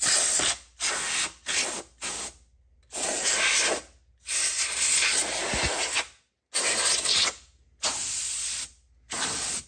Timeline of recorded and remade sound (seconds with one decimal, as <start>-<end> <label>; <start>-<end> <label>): 0.0-9.7 recorded